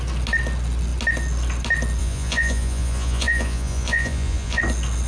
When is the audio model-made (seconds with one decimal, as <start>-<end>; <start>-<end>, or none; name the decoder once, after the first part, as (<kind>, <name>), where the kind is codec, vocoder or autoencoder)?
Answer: 2.0-4.6 (vocoder, Vocos)